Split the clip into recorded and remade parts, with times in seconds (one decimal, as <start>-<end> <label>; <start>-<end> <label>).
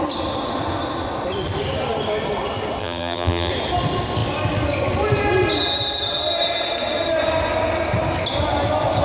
0.0-2.8 recorded; 2.8-3.5 remade; 3.5-9.0 recorded